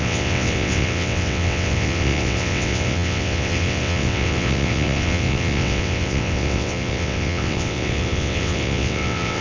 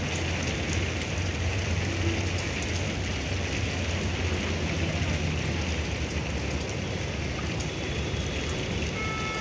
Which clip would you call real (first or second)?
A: second